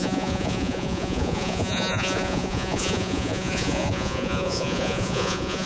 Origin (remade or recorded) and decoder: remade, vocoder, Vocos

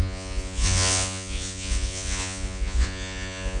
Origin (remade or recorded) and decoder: remade, vocoder, Vocos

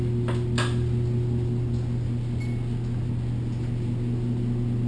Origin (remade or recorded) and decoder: recorded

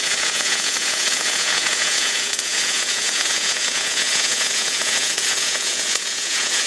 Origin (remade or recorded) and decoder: remade, vocoder, Vocos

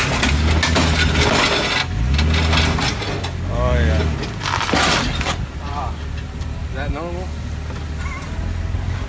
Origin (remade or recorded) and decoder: recorded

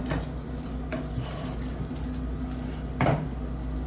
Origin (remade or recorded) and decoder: recorded